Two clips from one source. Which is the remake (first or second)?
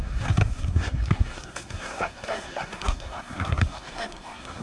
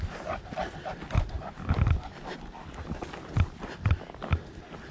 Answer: first